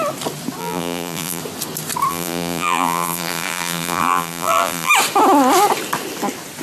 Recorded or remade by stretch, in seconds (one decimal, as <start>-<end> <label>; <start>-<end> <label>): 0.0-0.6 recorded; 0.6-1.4 remade; 1.4-2.1 recorded; 2.1-4.9 remade; 4.9-6.6 recorded